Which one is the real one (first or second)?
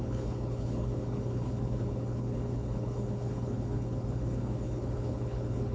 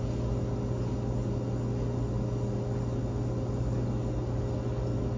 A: second